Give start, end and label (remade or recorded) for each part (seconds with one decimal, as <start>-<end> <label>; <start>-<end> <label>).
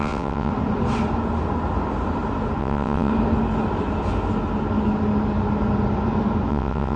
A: 0.0-0.5 remade; 0.5-2.6 recorded; 2.6-3.1 remade; 3.1-6.5 recorded; 6.5-7.0 remade